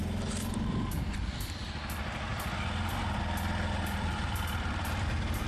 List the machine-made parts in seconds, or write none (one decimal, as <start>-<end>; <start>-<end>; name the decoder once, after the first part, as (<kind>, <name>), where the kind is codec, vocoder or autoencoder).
none